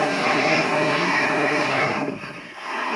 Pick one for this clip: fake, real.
fake